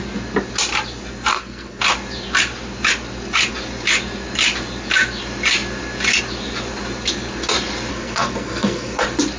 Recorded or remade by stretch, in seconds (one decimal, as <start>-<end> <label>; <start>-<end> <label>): 0.0-1.3 recorded; 1.3-1.8 remade; 1.8-7.9 recorded; 7.9-9.0 remade; 9.0-9.4 recorded